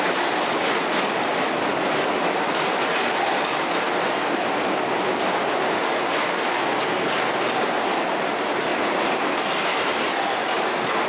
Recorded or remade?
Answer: recorded